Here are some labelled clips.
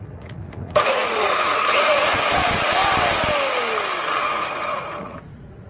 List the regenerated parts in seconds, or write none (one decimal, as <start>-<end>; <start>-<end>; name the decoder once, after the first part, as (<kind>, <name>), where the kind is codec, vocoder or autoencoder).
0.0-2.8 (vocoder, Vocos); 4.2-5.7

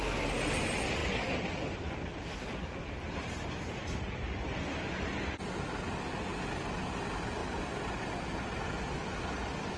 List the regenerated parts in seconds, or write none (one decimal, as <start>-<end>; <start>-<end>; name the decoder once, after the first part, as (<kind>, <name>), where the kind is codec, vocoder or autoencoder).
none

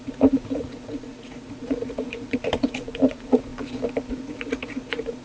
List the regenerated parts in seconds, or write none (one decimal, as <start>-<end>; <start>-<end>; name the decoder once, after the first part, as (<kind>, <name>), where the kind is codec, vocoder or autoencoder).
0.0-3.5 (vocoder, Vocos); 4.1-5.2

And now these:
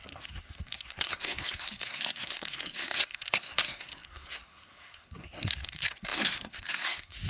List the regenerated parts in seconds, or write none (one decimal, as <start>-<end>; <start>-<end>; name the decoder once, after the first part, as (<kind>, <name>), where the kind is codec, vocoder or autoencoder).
0.0-7.3 (codec, SNAC)

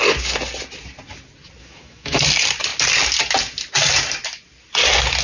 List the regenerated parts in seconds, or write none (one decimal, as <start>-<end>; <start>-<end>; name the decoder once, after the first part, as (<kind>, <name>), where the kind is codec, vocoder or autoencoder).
1.6-2.2 (autoencoder, DAC-VAE)